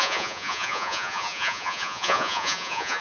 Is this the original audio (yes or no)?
no